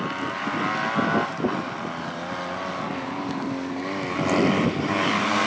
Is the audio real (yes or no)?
yes